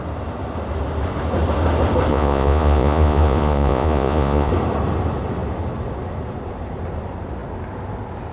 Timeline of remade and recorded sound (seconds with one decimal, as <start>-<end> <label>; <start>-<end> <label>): 0.0-2.1 recorded; 2.1-4.5 remade; 4.5-8.3 recorded